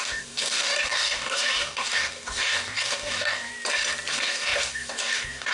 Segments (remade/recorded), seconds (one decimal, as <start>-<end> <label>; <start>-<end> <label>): 0.0-3.5 remade; 3.5-4.1 recorded; 4.1-5.5 remade